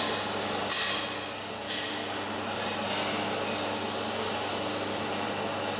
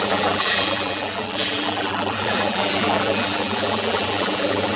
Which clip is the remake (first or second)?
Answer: second